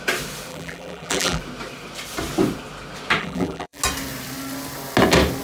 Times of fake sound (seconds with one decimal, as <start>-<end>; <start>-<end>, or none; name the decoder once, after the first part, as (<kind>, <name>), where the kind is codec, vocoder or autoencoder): 0.5-1.4 (vocoder, BigVGAN v2); 3.2-3.8